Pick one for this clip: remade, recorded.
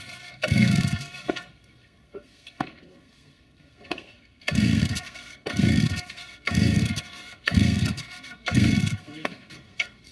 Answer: remade